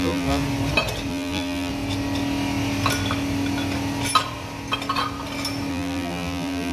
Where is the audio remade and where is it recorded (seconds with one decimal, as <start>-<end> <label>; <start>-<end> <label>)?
0.0-0.4 remade; 0.4-1.1 recorded; 1.1-1.7 remade; 1.7-5.7 recorded; 5.7-6.7 remade